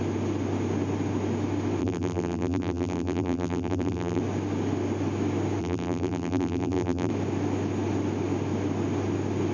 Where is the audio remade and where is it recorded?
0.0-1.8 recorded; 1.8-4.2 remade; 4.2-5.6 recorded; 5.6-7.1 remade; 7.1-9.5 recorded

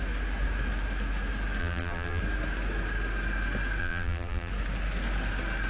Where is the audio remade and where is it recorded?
0.0-1.6 recorded; 1.6-2.2 remade; 2.2-3.8 recorded; 3.8-4.5 remade; 4.5-5.7 recorded

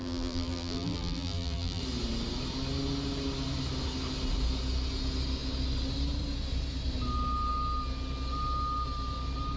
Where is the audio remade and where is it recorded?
0.0-1.8 remade; 1.8-9.6 recorded

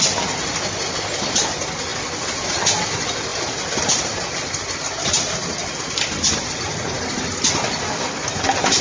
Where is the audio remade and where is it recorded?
0.0-3.3 recorded; 3.3-7.2 remade; 7.2-8.8 recorded

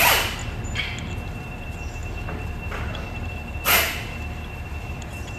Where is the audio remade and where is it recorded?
0.0-0.4 remade; 0.4-1.4 recorded; 1.4-5.4 remade